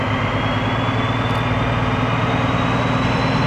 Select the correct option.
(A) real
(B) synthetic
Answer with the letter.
A